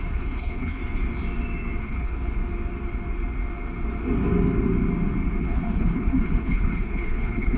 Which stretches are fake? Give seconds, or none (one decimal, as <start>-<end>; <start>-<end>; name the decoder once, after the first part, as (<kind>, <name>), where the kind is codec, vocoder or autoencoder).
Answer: 0.0-0.8 (codec, HILCodec); 1.8-2.4; 5.4-7.6